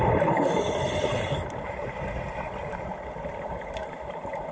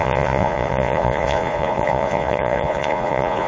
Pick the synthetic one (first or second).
second